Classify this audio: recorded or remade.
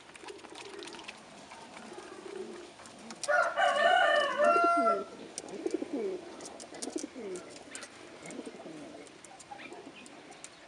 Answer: recorded